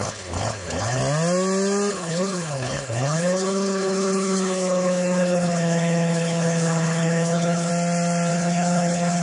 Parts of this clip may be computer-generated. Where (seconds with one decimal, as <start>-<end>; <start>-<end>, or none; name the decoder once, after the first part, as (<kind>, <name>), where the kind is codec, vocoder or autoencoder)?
0.0-1.0 (codec, HILCodec); 1.9-7.7; 8.3-9.2